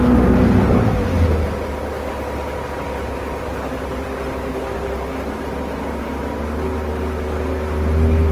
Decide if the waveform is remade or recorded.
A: recorded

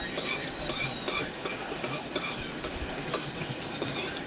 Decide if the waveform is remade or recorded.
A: remade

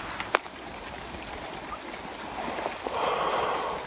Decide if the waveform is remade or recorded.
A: recorded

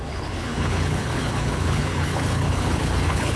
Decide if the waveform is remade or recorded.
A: remade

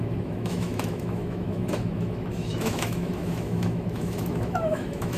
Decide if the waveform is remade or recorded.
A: remade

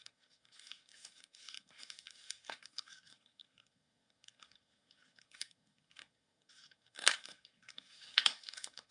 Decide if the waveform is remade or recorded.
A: remade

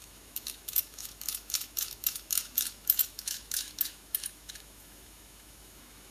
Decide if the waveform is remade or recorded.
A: remade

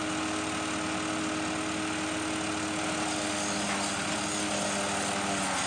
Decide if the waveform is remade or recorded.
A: recorded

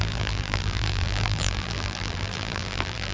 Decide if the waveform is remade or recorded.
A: remade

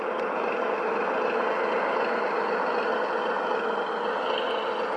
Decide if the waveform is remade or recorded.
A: recorded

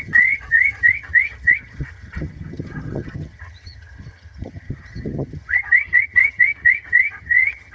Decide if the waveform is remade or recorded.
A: remade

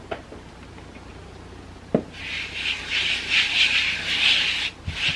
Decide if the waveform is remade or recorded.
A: recorded